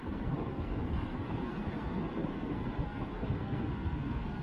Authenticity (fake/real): fake